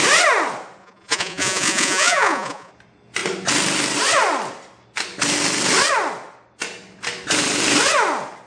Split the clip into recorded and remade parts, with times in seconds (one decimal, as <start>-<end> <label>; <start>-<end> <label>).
0.0-0.8 recorded; 0.8-2.7 remade; 2.7-8.5 recorded